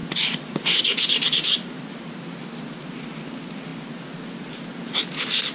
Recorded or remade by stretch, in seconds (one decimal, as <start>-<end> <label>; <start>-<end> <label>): 0.0-5.5 recorded